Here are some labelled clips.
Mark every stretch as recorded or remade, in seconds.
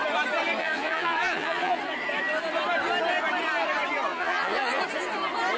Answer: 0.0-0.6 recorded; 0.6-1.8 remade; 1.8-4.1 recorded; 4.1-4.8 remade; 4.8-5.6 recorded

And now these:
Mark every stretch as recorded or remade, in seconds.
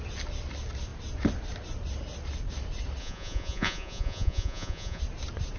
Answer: 0.0-3.0 recorded; 3.0-5.0 remade; 5.0-5.6 recorded